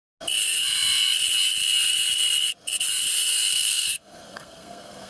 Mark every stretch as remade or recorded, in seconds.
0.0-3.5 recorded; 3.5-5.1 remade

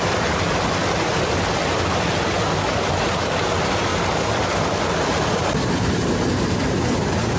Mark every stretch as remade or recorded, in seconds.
0.0-7.4 recorded